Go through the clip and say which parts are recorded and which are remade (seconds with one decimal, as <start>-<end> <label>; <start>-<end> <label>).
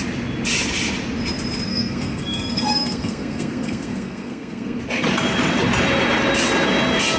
0.0-1.7 recorded; 1.7-4.8 remade; 4.8-7.2 recorded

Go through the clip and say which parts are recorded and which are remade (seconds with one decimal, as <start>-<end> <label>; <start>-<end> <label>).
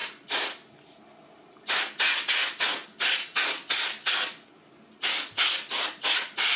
0.0-6.6 recorded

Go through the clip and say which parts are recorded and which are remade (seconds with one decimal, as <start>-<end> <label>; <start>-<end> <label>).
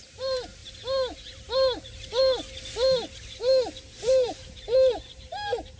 0.0-0.6 remade; 0.6-4.0 recorded; 4.0-5.8 remade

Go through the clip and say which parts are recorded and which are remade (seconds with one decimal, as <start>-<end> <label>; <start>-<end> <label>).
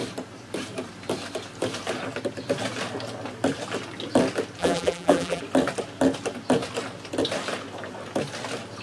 0.0-4.6 recorded; 4.6-5.4 remade; 5.4-8.8 recorded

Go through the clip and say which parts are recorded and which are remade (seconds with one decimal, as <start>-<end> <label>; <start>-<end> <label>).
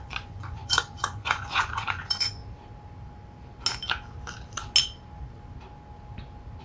0.0-2.4 remade; 2.4-6.6 recorded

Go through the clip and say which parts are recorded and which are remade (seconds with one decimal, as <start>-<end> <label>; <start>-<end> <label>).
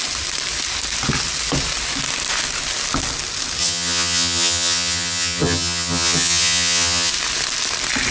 0.0-3.6 recorded; 3.6-7.1 remade; 7.1-8.1 recorded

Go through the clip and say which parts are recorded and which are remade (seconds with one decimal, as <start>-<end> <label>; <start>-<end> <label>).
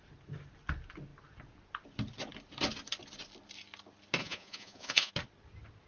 0.0-4.2 recorded; 4.2-5.1 remade; 5.1-5.9 recorded